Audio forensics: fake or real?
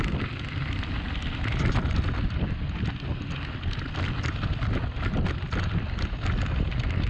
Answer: real